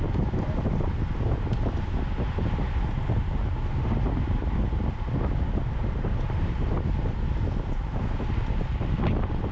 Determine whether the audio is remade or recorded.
recorded